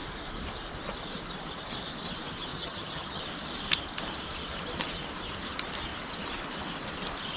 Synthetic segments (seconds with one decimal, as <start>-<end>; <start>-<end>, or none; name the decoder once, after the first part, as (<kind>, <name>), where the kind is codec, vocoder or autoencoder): 2.5-3.2 (vocoder, HiFi-GAN)